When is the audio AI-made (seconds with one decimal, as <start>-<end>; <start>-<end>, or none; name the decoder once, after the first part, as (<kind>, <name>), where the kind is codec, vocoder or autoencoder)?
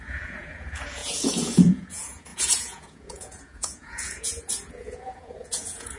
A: 0.0-6.0 (vocoder, Vocos)